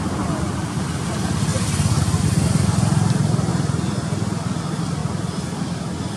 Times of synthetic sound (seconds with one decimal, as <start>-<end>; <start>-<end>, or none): 1.5-2.0